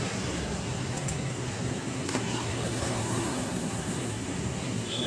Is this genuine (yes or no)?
no